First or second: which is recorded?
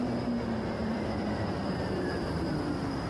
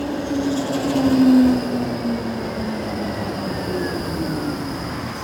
second